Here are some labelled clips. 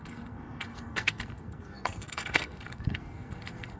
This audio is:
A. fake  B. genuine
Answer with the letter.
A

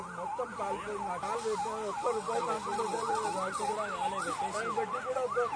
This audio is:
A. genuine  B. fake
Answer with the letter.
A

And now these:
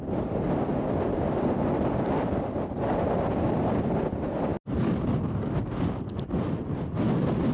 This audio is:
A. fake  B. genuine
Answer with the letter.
B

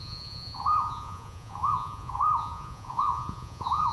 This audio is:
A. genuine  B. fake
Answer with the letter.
B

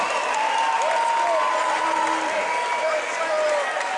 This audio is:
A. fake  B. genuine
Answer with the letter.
B